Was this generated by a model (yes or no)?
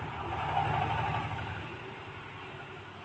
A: no